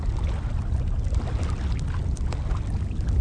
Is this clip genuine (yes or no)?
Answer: yes